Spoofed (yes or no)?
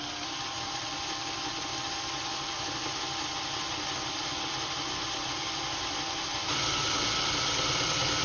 no